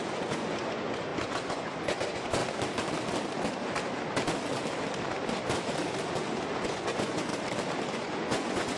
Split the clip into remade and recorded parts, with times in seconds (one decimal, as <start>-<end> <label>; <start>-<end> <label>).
0.0-2.4 remade; 2.4-6.6 recorded; 6.6-7.3 remade; 7.3-7.9 recorded; 7.9-8.8 remade

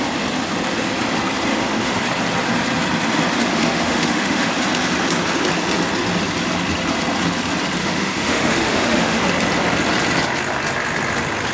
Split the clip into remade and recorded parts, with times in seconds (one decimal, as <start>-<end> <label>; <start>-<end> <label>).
0.0-1.5 recorded; 1.5-2.0 remade; 2.0-3.5 recorded; 3.5-4.5 remade; 4.5-7.8 recorded; 7.8-9.2 remade; 9.2-11.5 recorded

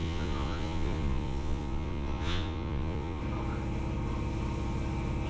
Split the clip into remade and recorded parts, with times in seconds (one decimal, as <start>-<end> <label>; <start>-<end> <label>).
0.0-3.2 remade; 3.2-5.3 recorded

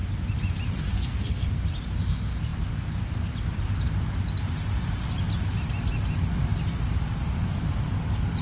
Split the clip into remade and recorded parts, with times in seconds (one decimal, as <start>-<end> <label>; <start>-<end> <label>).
0.0-0.9 recorded; 0.9-1.6 remade; 1.6-8.4 recorded